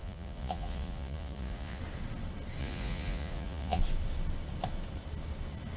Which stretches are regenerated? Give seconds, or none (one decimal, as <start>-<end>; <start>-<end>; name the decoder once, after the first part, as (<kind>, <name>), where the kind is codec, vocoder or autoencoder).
0.0-1.8 (vocoder, Vocos); 2.6-3.8